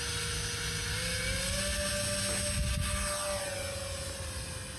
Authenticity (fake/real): real